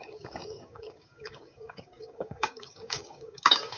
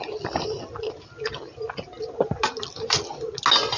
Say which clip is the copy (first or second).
first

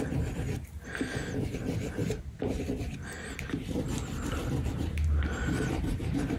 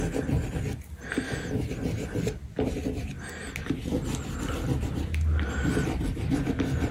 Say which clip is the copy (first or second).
first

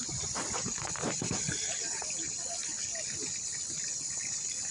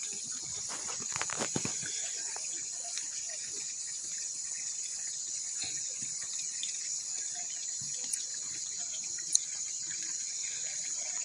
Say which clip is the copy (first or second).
second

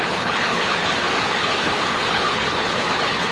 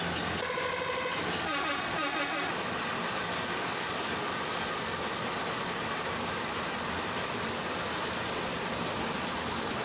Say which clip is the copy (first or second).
first